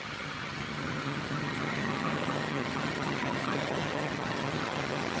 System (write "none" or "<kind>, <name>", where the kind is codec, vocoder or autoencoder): vocoder, HiFi-GAN